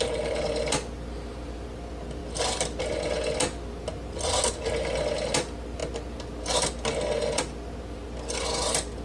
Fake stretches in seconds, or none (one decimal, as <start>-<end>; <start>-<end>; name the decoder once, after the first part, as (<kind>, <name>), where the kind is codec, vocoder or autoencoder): none